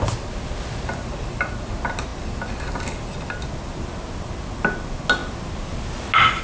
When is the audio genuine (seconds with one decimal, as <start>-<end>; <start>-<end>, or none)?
0.0-6.4